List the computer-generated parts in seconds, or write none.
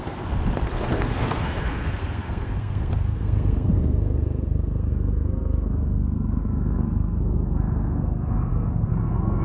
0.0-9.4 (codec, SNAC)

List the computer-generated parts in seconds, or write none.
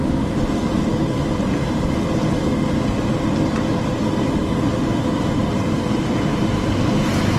none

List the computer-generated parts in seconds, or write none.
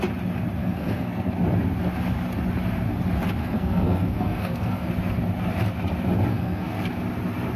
0.6-1.3 (codec, SNAC); 3.4-4.9; 6.3-6.9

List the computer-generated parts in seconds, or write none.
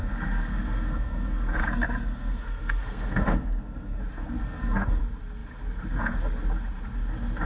0.0-4.0 (codec, SNAC); 4.4-5.0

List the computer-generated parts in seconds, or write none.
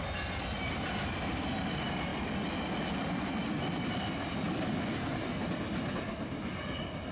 none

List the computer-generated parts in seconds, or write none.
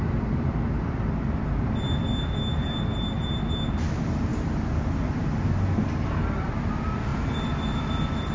none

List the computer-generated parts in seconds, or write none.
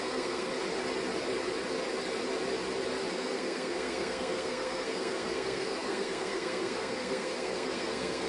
0.0-0.5 (codec, SNAC); 3.1-8.3